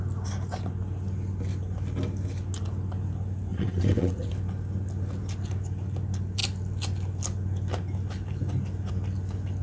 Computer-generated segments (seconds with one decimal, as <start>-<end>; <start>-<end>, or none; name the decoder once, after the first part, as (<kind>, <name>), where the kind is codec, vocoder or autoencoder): 3.5-4.3 (vocoder, WaveNeXt)